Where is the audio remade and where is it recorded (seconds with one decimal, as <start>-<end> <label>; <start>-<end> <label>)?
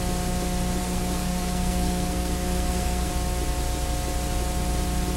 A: 0.0-0.8 recorded; 0.8-3.1 remade; 3.1-5.2 recorded